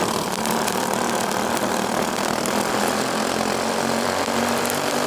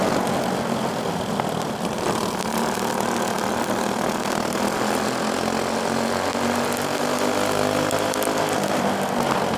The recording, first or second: second